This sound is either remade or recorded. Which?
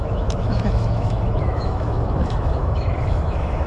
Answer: remade